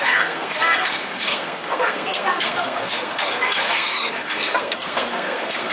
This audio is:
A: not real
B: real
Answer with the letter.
A